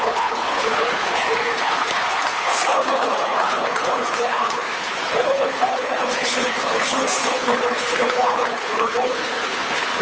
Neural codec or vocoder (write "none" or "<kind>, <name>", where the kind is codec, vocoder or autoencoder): codec, HILCodec